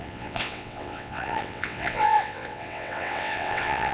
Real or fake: fake